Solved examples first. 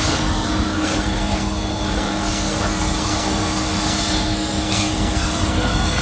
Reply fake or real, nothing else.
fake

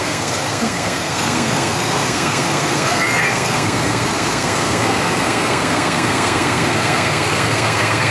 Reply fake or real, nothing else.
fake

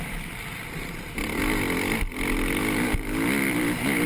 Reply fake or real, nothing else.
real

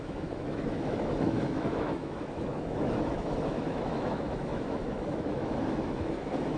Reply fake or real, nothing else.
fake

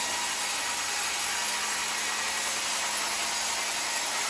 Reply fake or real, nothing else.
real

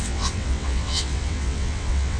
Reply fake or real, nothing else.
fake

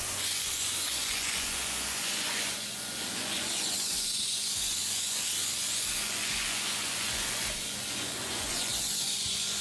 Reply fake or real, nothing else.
fake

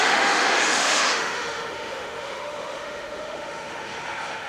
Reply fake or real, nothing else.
fake